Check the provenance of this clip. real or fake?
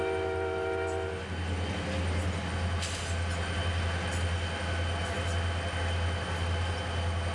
real